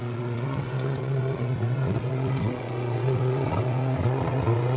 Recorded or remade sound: remade